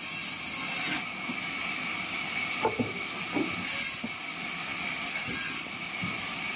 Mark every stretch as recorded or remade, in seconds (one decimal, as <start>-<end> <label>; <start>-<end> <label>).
0.0-6.6 recorded